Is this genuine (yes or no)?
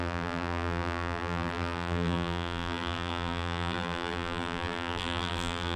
no